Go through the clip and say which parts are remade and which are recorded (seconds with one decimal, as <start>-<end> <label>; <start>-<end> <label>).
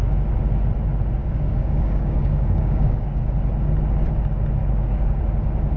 0.0-1.2 recorded; 1.2-3.2 remade; 3.2-4.6 recorded; 4.6-5.2 remade; 5.2-5.8 recorded